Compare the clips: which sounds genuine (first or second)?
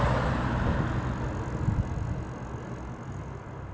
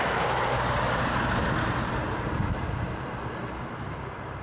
first